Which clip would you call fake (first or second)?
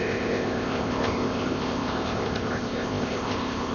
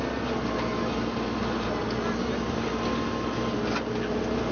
first